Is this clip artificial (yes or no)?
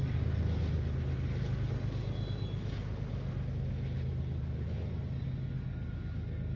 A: no